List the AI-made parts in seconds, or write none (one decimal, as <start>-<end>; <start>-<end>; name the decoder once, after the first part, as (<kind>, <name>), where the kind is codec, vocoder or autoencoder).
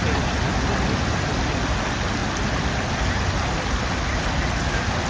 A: none